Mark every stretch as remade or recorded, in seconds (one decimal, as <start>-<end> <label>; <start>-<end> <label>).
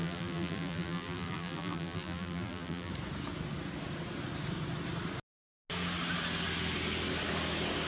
0.0-2.9 remade; 2.9-7.9 recorded